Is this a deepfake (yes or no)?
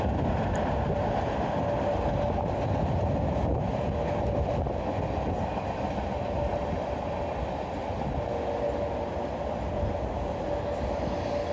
no